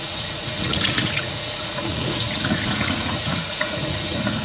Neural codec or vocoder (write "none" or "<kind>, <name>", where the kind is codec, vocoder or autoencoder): vocoder, Vocos